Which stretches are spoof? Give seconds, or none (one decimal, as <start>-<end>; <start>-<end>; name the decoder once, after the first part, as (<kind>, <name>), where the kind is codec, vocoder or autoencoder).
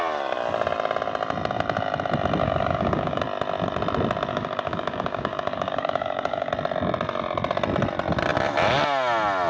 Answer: 2.4-3.2 (codec, DAC); 4.3-6.5